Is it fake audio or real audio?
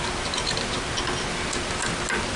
real